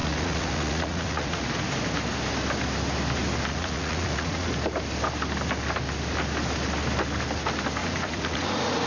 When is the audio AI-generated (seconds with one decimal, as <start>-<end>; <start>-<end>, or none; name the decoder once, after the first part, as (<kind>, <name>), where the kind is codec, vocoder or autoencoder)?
0.0-1.5 (vocoder, Vocos); 3.5-4.5; 7.8-8.9